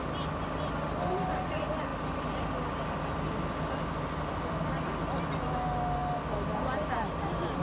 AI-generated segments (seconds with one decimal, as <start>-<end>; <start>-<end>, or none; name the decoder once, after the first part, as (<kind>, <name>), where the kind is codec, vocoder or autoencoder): none